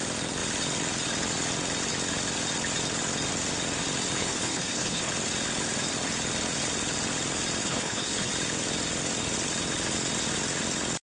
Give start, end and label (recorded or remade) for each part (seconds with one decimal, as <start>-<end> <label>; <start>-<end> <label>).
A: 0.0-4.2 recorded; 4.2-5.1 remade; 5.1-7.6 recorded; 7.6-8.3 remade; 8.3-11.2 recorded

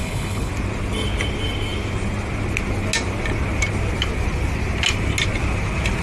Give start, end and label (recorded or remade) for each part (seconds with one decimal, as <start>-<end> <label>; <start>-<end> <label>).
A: 0.0-0.5 remade; 0.5-6.0 recorded

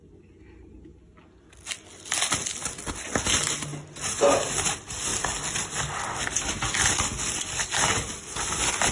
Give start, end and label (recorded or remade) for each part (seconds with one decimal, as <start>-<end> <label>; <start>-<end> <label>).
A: 0.0-8.9 recorded

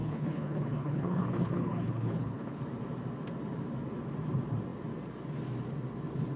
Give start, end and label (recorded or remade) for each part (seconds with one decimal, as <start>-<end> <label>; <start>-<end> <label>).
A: 0.0-2.6 remade; 2.6-6.4 recorded

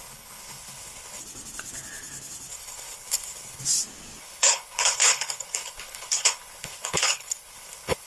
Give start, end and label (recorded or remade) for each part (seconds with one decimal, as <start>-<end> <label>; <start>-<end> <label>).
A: 0.0-1.2 remade; 1.2-2.5 recorded; 2.5-3.6 remade; 3.6-4.2 recorded; 4.2-8.1 remade

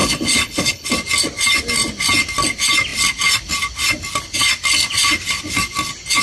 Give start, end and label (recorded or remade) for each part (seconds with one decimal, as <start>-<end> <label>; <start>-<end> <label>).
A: 0.0-0.9 remade; 0.9-6.2 recorded